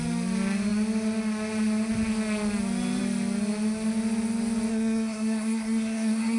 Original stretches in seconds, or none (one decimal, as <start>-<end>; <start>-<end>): 0.0-4.7